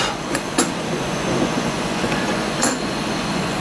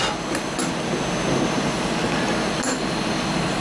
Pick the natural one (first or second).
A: second